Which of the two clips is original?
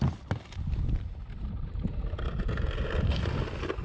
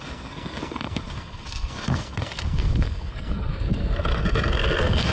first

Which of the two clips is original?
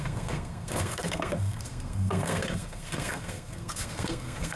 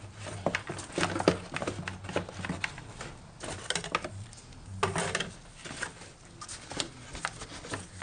second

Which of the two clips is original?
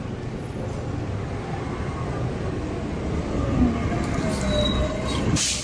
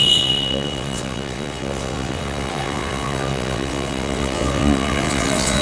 first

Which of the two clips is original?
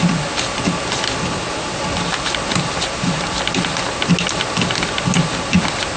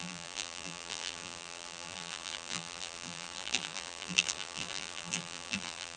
first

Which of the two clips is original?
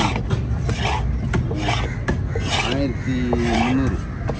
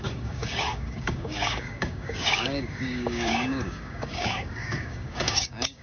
first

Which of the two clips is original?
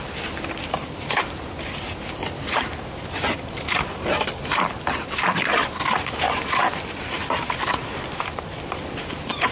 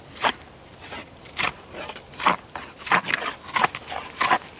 second